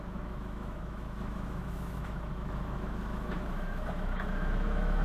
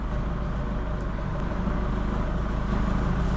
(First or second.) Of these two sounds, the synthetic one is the first